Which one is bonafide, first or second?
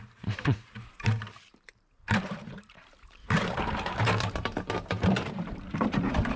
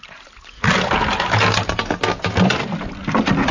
second